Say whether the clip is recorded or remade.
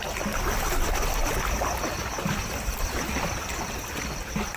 recorded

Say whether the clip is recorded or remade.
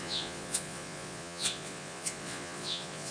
remade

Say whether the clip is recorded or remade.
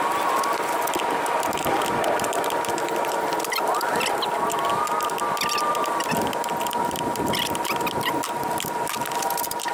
recorded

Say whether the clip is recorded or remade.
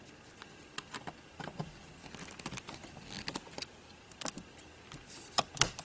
recorded